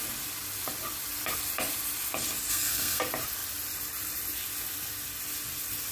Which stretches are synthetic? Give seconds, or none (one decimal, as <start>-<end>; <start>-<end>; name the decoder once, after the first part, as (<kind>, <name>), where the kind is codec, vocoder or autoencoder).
2.5-3.0 (codec, SNAC)